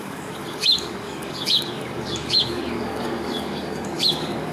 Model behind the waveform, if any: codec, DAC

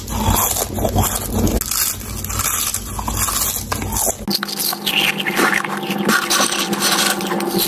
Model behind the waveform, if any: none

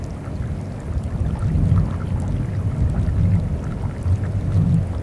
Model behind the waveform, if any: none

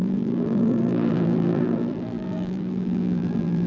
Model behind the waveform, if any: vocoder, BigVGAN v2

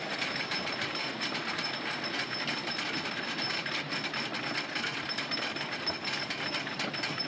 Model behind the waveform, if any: none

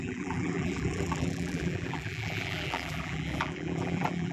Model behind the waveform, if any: vocoder, BigVGAN v2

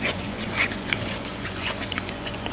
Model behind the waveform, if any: vocoder, Vocos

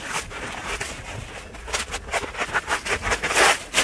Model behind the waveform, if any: none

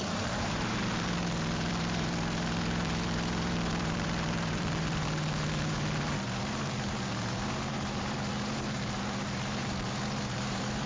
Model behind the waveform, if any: vocoder, BigVGAN v2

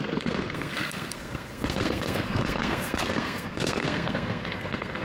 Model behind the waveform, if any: codec, SNAC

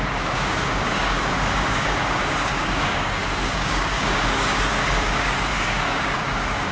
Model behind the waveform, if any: codec, DAC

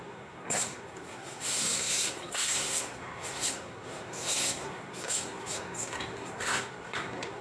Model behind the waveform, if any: codec, SNAC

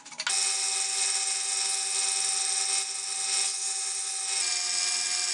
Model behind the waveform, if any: none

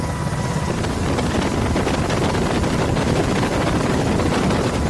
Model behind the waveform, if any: none